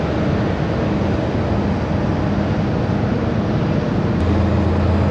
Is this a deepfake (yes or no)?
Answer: no